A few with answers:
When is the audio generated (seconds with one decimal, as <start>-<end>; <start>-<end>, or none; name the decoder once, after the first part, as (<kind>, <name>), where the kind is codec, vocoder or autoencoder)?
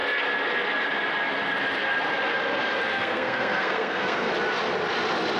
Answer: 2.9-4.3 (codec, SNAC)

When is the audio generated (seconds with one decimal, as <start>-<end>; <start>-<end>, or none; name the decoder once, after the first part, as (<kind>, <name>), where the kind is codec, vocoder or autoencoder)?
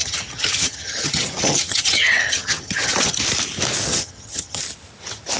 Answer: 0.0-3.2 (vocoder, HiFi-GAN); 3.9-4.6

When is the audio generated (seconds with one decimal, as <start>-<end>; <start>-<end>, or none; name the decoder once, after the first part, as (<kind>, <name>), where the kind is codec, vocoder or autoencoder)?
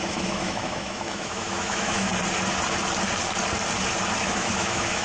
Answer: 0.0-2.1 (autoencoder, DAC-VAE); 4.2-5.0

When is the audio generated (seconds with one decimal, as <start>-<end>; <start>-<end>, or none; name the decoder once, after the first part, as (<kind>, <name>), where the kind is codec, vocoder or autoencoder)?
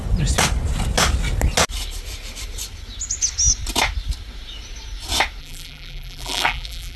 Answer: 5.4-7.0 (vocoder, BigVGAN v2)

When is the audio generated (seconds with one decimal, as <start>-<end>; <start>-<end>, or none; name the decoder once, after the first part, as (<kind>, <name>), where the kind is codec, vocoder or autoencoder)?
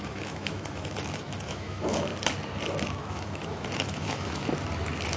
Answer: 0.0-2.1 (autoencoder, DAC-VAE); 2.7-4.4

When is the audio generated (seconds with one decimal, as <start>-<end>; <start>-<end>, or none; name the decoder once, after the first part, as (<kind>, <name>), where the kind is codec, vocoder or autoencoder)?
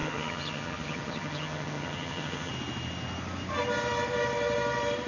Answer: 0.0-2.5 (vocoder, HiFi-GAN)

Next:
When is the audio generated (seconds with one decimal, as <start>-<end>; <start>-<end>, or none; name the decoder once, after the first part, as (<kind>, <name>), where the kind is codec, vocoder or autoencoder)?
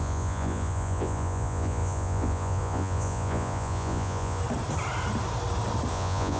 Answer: 0.0-4.4 (vocoder, Vocos); 5.9-6.4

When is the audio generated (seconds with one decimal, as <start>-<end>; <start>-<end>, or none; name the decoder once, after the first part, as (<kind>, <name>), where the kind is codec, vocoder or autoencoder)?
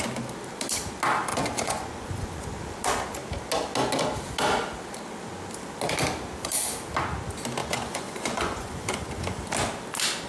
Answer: 1.3-2.4 (vocoder, Vocos); 7.6-9.0